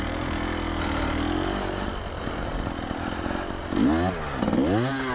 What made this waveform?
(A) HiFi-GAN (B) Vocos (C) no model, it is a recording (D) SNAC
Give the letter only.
C